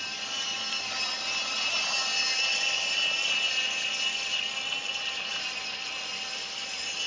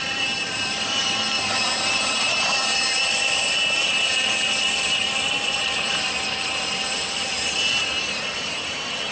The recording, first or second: first